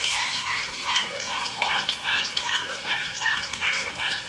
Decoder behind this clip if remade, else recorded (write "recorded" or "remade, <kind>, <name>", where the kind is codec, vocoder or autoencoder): remade, codec, SNAC